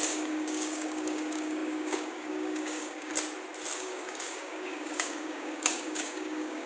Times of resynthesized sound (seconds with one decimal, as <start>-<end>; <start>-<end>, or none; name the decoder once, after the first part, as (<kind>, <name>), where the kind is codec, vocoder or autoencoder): 0.0-3.1 (codec, DAC); 3.8-6.7

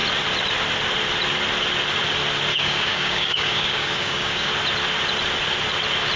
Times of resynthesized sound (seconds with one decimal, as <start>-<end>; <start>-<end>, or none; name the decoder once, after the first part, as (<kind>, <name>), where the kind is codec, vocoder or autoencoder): 2.5-4.5 (codec, DAC)

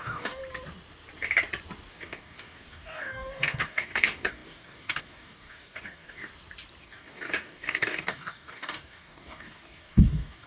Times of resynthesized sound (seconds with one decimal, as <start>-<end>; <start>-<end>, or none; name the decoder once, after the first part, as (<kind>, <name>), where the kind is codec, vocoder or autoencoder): 0.0-0.4 (codec, DAC); 1.9-6.3; 6.8-10.5

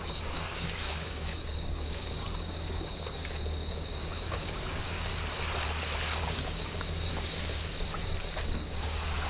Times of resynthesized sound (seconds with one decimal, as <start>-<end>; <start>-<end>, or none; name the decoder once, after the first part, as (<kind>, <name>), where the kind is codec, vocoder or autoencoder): 0.0-5.1 (codec, DAC); 6.2-7.7; 8.2-9.3

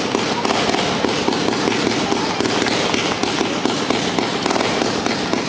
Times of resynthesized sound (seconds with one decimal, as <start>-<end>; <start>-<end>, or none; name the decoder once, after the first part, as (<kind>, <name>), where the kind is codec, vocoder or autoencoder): none

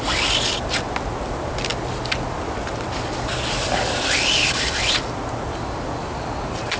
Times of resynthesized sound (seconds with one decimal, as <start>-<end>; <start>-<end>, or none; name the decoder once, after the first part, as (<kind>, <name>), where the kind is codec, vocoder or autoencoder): none

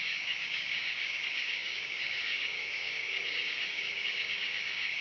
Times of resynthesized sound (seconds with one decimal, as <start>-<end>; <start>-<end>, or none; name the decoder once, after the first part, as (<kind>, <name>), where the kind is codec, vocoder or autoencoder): 0.0-5.0 (codec, DAC)

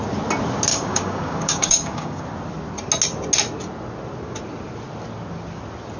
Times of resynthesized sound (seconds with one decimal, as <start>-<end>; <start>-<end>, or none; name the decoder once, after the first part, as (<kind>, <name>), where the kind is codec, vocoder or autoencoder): 0.7-2.2 (codec, DAC)